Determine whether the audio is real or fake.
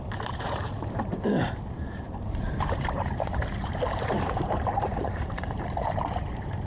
fake